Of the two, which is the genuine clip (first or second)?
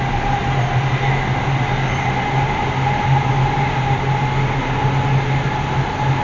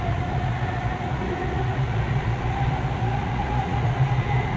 first